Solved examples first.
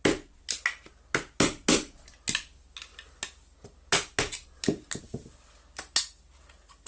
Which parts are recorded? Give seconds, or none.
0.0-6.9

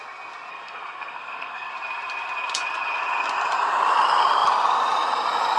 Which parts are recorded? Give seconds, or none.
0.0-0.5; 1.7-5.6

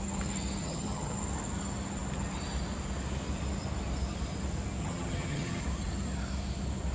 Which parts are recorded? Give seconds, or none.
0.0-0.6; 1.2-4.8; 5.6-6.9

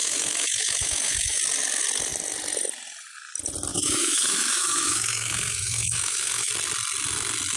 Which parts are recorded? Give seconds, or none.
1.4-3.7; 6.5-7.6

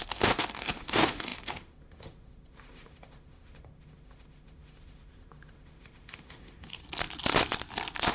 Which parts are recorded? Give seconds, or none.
6.8-8.1